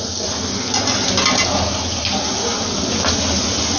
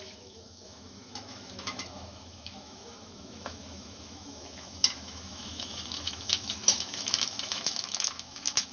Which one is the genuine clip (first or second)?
first